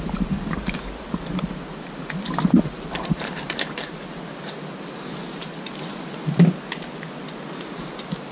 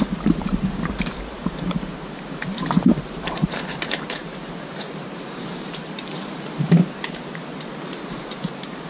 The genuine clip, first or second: first